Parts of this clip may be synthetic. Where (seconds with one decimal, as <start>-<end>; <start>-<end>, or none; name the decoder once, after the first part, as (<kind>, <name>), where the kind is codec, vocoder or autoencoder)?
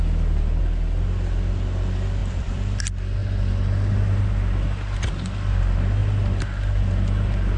2.2-2.8 (vocoder, BigVGAN v2)